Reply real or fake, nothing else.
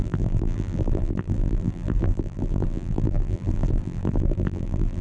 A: fake